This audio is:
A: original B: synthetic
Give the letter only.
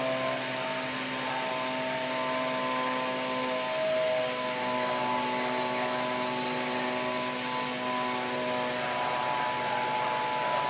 A